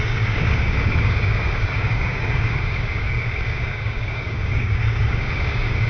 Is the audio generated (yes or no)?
yes